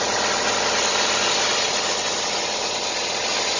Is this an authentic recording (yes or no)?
yes